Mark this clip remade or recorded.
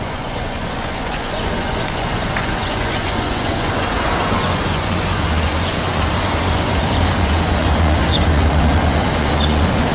remade